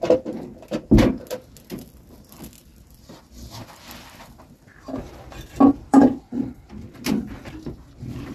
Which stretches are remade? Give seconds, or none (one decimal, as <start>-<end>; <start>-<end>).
2.7-7.2